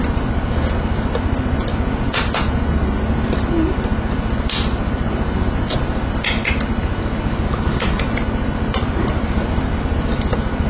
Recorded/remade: recorded